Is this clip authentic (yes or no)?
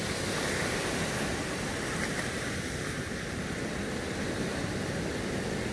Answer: yes